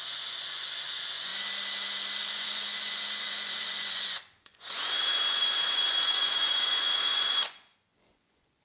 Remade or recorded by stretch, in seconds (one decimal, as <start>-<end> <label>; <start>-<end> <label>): 0.0-1.3 remade; 1.3-2.3 recorded; 2.3-8.6 remade